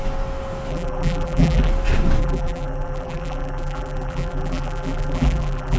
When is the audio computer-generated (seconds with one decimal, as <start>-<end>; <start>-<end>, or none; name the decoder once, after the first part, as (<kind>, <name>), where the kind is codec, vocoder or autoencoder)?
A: 0.7-1.7 (vocoder, BigVGAN v2); 2.2-5.8